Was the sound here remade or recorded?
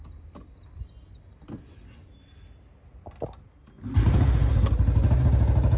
recorded